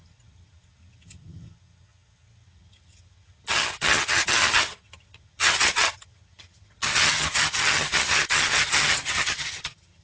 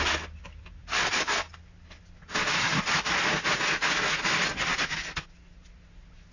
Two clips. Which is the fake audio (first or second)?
first